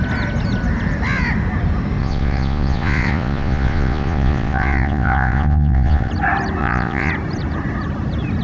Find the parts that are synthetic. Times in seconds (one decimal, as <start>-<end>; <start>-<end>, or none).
2.0-6.1; 6.6-7.1